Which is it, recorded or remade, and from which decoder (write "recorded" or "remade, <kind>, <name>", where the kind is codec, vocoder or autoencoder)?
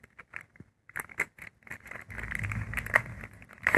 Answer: recorded